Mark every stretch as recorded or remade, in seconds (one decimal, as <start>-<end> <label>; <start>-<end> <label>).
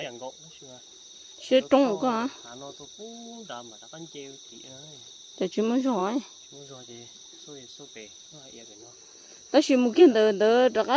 0.0-11.0 recorded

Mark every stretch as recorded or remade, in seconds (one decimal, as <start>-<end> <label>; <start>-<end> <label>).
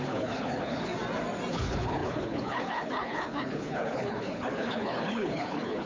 0.0-0.9 remade; 0.9-1.5 recorded; 1.5-5.9 remade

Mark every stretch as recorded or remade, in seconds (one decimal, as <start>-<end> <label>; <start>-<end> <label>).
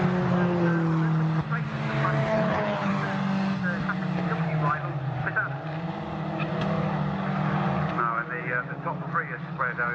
0.0-2.2 recorded; 2.2-2.9 remade; 2.9-9.9 recorded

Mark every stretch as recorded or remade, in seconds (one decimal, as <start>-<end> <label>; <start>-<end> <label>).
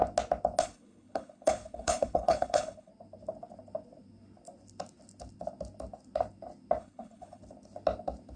0.0-0.6 recorded; 0.6-2.9 remade; 2.9-6.8 recorded; 6.8-7.4 remade; 7.4-8.4 recorded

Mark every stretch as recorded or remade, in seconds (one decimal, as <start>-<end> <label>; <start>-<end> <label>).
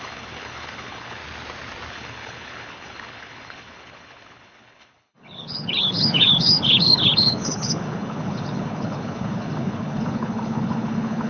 0.0-1.2 remade; 1.2-1.9 recorded; 1.9-11.3 remade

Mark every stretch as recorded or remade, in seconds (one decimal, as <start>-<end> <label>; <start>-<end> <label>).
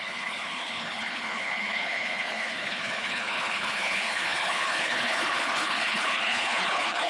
0.0-7.1 remade